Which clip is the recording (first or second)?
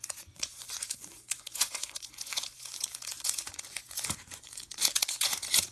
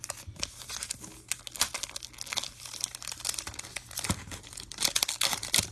second